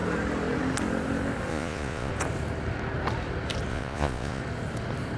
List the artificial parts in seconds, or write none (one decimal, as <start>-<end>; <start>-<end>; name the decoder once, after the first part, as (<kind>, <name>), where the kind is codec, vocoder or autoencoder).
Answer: 1.5-2.1 (vocoder, Vocos); 3.7-4.4

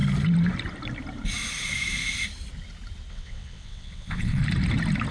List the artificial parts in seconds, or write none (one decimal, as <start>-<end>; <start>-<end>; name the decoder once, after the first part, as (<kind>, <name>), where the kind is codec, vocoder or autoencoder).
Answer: 3.1-4.4 (vocoder, WaveNeXt)

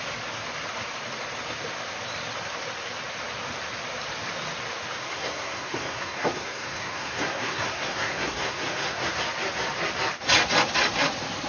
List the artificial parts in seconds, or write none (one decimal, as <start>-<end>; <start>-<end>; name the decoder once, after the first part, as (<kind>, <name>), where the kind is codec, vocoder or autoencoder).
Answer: 5.0-9.1 (codec, SNAC)